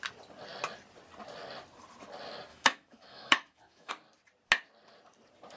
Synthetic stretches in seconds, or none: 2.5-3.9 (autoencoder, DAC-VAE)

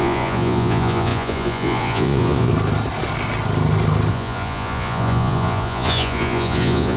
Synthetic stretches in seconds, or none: 0.0-2.5 (vocoder, Vocos); 4.1-7.0

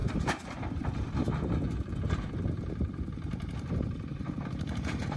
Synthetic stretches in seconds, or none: 0.0-5.2 (vocoder, BigVGAN v2)

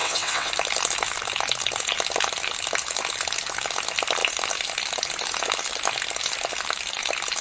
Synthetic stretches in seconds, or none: 0.0-0.5 (vocoder, WaveNeXt)

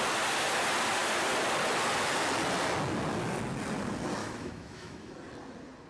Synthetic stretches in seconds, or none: 4.2-5.1 (autoencoder, DAC-VAE)

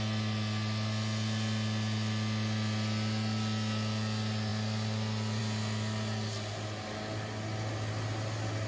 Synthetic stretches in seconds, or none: none